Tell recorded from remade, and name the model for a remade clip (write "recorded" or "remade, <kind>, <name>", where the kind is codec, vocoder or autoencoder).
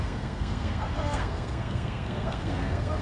remade, codec, SNAC